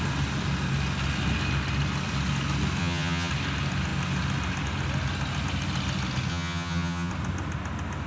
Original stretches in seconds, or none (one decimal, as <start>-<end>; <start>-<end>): 0.0-2.8; 3.3-6.3; 7.1-8.1